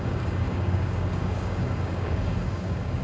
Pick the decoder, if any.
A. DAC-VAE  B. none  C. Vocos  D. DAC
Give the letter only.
D